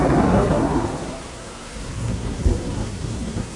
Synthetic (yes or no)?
yes